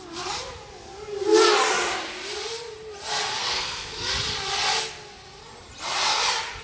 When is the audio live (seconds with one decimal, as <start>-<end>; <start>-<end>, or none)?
0.0-3.4; 4.1-6.6